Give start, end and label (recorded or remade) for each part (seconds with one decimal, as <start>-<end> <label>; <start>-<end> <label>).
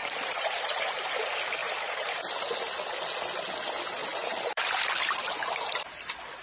0.0-0.8 remade; 0.8-1.6 recorded; 1.6-2.3 remade; 2.3-4.0 recorded; 4.0-4.8 remade; 4.8-6.4 recorded